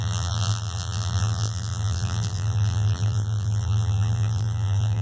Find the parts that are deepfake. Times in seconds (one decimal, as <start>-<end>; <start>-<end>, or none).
0.0-5.0